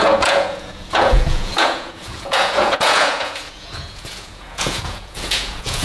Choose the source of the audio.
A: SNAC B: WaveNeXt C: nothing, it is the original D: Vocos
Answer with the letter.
D